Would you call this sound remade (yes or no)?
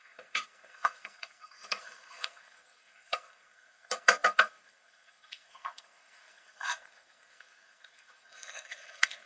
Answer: yes